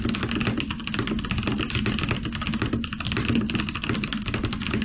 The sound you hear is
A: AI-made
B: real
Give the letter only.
B